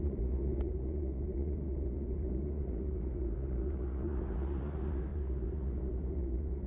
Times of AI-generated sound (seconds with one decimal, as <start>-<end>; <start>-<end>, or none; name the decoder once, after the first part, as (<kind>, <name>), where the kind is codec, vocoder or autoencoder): 0.0-6.7 (vocoder, Vocos)

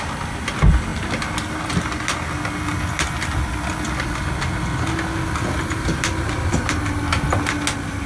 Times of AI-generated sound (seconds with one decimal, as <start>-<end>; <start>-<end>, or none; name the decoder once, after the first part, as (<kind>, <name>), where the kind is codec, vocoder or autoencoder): none

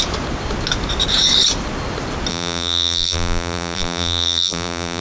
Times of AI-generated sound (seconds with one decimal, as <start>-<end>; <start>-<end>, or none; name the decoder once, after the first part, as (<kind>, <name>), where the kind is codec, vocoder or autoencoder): 2.3-5.0 (vocoder, BigVGAN v2)

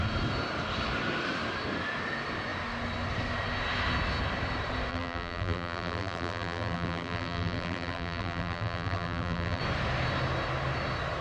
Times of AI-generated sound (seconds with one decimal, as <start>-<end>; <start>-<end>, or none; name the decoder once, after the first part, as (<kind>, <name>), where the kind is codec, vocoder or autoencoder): 4.9-9.6 (vocoder, BigVGAN v2)

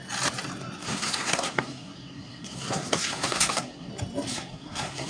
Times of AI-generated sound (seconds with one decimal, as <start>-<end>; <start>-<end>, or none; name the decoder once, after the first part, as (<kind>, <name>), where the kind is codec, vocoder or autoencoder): 0.8-3.9 (codec, SNAC); 4.3-5.1

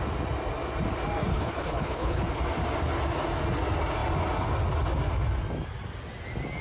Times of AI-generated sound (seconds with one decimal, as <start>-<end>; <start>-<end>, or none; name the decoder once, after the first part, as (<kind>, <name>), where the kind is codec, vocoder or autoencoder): 1.3-2.4 (codec, HILCodec)

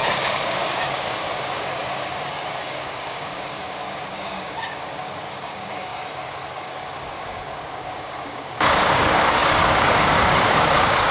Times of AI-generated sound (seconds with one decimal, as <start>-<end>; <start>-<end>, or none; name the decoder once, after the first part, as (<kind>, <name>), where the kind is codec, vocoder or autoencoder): 0.0-11.1 (codec, DAC)

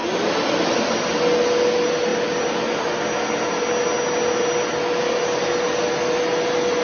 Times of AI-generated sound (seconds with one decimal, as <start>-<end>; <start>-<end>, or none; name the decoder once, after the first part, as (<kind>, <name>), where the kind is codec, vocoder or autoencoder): none